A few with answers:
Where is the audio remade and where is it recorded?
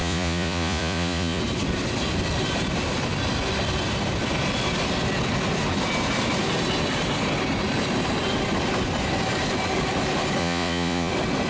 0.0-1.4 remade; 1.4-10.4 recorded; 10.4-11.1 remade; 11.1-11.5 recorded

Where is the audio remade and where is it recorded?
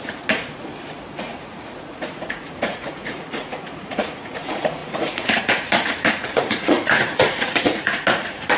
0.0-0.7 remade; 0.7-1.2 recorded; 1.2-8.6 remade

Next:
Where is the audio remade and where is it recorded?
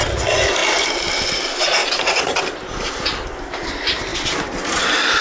0.0-1.8 recorded; 1.8-2.9 remade; 2.9-5.2 recorded